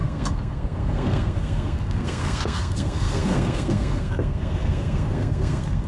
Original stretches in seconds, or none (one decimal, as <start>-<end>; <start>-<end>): none